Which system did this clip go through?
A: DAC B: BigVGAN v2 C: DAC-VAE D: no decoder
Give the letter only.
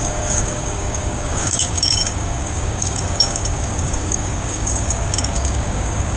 A